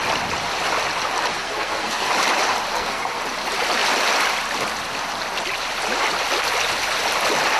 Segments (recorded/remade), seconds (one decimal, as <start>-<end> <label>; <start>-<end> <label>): 0.0-1.3 recorded; 1.3-2.1 remade; 2.1-2.7 recorded; 2.7-3.2 remade; 3.2-7.6 recorded